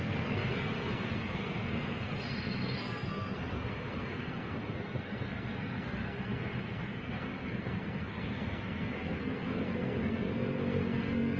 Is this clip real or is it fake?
fake